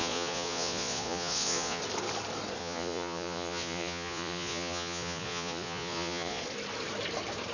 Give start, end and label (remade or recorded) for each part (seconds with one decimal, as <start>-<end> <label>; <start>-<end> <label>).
0.0-1.8 remade; 1.8-2.6 recorded; 2.6-6.4 remade; 6.4-7.5 recorded